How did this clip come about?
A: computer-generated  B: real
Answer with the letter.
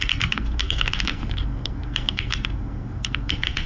A